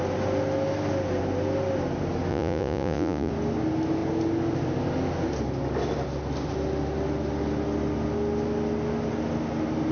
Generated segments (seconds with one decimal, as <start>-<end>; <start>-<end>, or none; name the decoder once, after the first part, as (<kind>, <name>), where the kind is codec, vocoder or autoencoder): 2.3-3.3 (vocoder, Vocos)